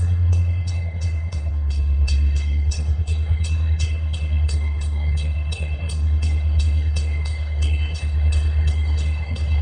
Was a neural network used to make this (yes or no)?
yes